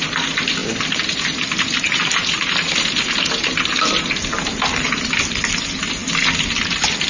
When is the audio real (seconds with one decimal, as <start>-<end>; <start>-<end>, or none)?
0.0-7.1